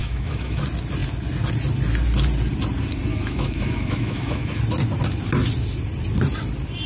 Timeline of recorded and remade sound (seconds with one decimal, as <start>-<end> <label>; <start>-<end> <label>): 0.0-0.6 remade; 0.6-3.1 recorded; 3.1-4.6 remade; 4.6-6.9 recorded